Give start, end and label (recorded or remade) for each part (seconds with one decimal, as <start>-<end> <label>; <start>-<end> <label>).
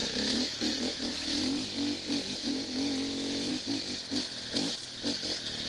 0.0-1.4 remade; 1.4-2.4 recorded; 2.4-3.5 remade; 3.5-5.7 recorded